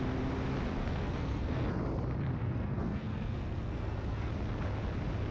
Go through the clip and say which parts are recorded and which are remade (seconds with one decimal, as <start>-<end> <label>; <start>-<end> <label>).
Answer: 0.0-0.8 recorded; 0.8-1.7 remade; 1.7-2.4 recorded; 2.4-4.3 remade; 4.3-5.3 recorded